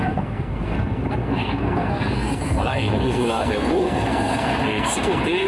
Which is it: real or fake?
fake